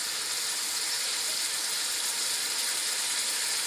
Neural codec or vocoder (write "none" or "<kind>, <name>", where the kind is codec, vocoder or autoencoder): vocoder, BigVGAN v2